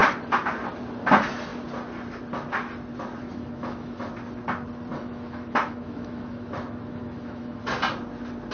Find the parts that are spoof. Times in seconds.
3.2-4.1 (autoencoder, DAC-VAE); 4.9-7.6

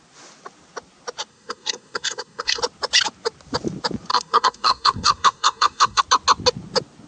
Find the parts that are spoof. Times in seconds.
1.3-2.6 (codec, SNAC); 4.1-6.0

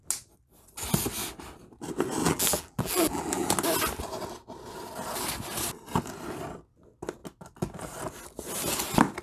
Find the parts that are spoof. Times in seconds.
2.2-3.5 (vocoder, BigVGAN v2)